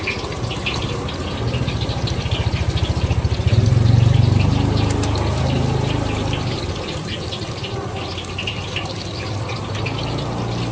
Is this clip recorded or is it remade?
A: recorded